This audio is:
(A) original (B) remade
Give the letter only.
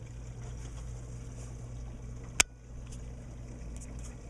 A